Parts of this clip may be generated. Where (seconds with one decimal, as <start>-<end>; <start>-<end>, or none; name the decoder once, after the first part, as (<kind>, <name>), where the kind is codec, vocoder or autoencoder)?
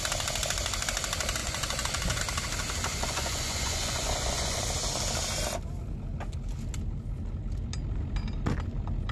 1.4-2.2 (vocoder, Vocos); 2.9-4.6